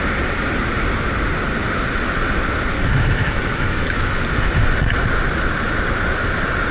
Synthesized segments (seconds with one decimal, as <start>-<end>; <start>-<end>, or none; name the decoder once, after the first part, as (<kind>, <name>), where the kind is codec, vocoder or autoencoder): 3.2-4.1 (autoencoder, DAC-VAE)